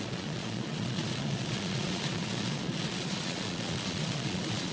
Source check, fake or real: fake